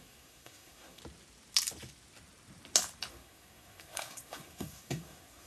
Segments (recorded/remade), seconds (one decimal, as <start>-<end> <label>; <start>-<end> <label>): 0.0-1.0 remade; 1.0-3.1 recorded; 3.1-5.5 remade